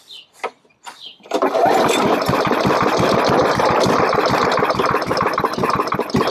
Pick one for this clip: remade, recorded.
recorded